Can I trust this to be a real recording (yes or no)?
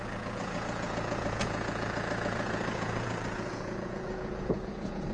no